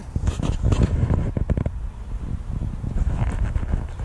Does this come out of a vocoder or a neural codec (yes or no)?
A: no